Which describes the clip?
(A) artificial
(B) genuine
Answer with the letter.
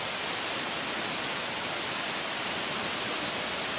B